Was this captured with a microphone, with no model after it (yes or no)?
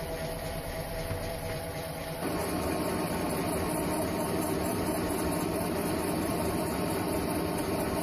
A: no